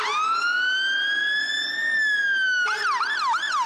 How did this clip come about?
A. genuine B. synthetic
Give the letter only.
A